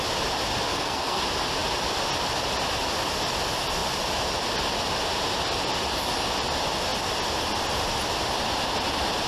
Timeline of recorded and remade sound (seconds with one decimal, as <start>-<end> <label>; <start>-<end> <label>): 0.0-0.7 recorded; 0.7-1.2 remade; 1.2-9.3 recorded